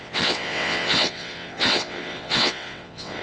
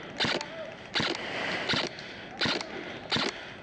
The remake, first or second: first